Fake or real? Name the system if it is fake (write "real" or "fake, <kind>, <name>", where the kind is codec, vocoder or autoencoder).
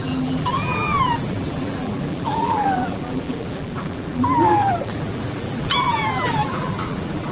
fake, vocoder, BigVGAN v2